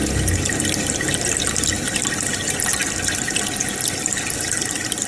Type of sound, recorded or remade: recorded